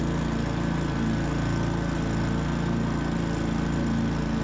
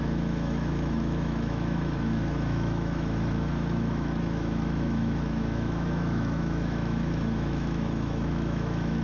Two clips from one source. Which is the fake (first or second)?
second